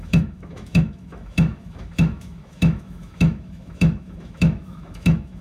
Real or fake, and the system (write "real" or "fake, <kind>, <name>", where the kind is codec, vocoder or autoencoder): fake, autoencoder, DAC-VAE